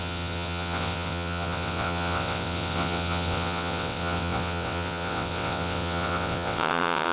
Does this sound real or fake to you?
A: fake